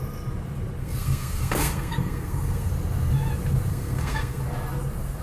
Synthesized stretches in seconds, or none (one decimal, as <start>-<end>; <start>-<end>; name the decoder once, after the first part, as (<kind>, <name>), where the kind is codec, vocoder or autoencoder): 0.8-2.7 (codec, SNAC); 3.7-4.4